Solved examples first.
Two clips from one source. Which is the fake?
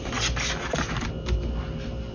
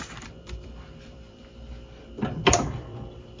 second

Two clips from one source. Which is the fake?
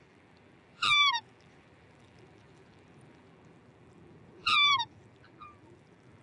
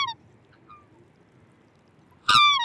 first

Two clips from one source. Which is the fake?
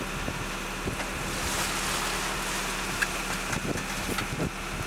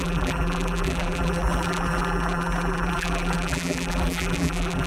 second